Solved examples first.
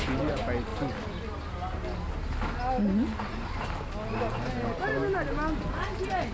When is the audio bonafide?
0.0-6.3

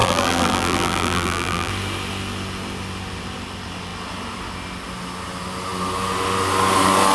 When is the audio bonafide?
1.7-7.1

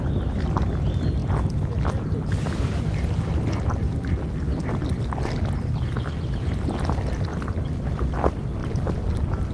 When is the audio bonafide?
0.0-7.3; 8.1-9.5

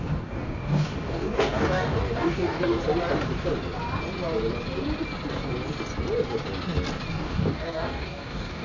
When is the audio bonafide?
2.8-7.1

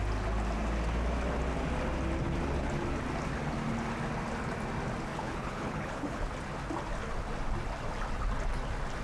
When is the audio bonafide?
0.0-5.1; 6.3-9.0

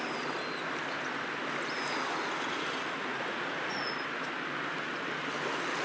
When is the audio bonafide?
0.0-3.1; 3.9-5.8